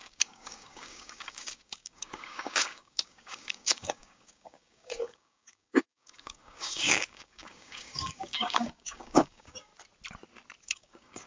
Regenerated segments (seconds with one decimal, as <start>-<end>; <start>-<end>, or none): 0.0-9.7; 10.6-11.3